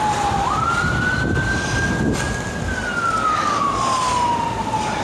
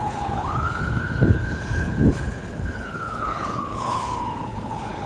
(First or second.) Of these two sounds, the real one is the first